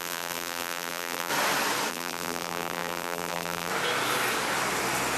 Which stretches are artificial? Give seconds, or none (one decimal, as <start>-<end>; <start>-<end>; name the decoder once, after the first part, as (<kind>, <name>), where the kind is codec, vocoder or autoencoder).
0.0-1.3 (vocoder, BigVGAN v2); 1.9-3.7